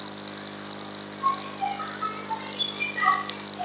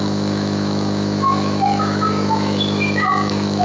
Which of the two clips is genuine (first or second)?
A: first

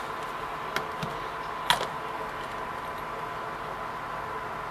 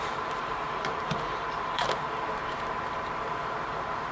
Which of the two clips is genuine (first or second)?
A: first